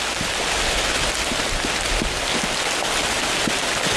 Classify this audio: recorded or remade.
recorded